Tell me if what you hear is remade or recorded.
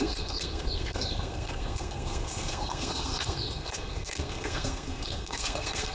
remade